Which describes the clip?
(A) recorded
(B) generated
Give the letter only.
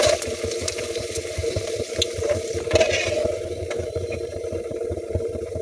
B